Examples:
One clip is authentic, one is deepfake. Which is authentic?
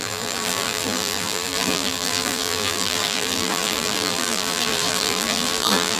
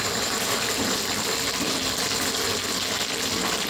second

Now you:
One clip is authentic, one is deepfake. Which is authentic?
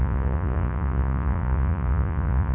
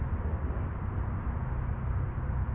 second